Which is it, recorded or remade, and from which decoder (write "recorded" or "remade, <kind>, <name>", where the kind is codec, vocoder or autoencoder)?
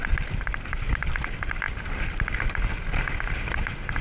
remade, vocoder, BigVGAN v2